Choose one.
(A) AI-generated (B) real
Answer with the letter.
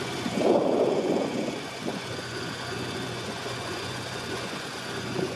A